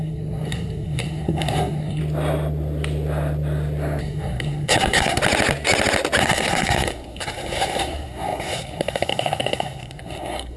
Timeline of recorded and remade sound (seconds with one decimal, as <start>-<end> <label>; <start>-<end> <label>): 0.0-2.0 remade; 2.0-4.0 recorded; 4.0-5.2 remade; 5.2-6.2 recorded; 6.2-10.6 remade